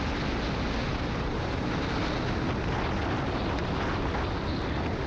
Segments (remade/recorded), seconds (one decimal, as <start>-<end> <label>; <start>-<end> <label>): 0.0-5.1 recorded